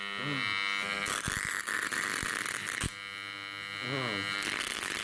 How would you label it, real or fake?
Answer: real